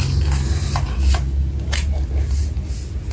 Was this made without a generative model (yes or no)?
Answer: yes